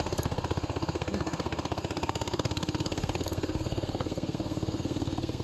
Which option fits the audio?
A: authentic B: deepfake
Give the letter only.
B